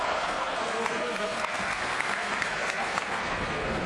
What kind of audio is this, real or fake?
fake